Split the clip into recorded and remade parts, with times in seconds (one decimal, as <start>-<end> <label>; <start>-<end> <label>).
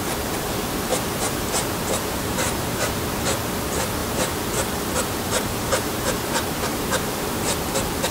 0.0-0.9 recorded; 0.9-2.9 remade; 2.9-4.0 recorded; 4.0-6.2 remade; 6.2-6.7 recorded; 6.7-7.4 remade; 7.4-8.1 recorded